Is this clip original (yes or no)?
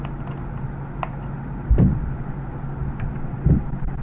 yes